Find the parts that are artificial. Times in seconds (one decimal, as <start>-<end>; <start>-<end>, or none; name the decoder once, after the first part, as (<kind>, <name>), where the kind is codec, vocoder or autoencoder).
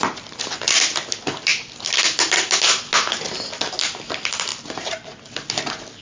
none